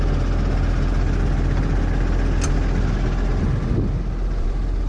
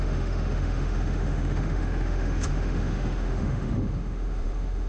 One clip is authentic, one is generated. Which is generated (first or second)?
second